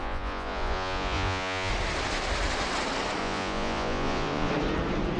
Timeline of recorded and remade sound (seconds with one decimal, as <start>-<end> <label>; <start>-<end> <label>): 0.0-1.7 remade; 1.7-3.2 recorded; 3.2-4.5 remade; 4.5-5.2 recorded